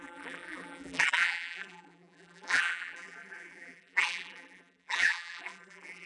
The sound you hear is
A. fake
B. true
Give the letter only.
A